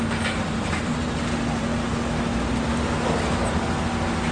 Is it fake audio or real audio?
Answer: real